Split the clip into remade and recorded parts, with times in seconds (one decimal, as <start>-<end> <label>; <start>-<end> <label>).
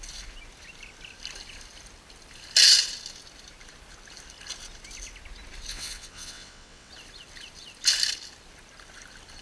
0.0-5.7 recorded; 5.7-6.9 remade; 6.9-9.4 recorded